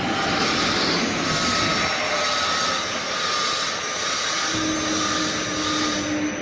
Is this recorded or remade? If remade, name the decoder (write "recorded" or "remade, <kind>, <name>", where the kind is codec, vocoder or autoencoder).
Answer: recorded